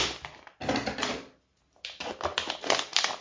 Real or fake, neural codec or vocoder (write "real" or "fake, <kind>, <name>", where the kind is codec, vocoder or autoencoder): real